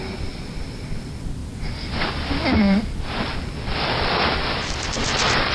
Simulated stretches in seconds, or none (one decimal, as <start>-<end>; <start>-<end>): none

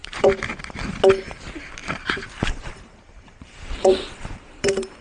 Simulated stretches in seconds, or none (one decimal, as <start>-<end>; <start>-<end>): 0.0-0.5; 1.8-5.0

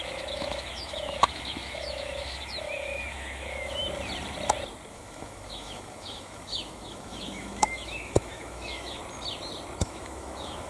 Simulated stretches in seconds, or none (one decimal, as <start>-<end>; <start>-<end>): 0.0-3.8; 4.9-9.0; 9.8-10.7

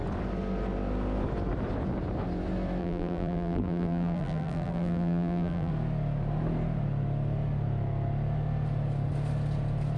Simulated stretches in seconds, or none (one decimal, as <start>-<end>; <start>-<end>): 2.8-5.7

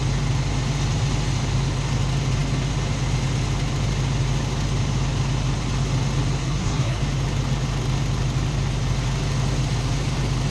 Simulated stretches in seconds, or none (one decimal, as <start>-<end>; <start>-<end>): 6.4-7.0

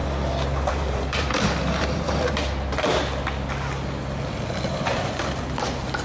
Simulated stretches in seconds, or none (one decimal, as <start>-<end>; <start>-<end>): 0.7-2.4; 4.7-6.0